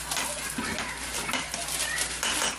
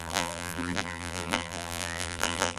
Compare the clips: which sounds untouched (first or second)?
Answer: first